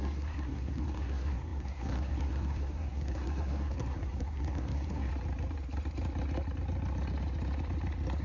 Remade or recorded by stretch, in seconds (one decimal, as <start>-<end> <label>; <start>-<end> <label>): 0.0-5.1 remade; 5.1-8.2 recorded